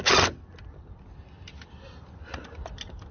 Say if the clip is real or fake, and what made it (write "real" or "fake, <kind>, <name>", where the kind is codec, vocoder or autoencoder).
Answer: real